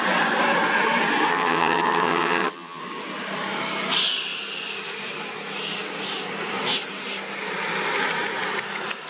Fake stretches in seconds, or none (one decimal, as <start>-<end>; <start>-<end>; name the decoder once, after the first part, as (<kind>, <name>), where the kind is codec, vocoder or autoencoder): 1.3-2.8 (vocoder, HiFi-GAN)